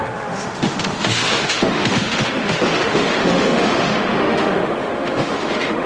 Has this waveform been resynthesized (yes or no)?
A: yes